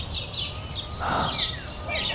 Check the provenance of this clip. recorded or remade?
recorded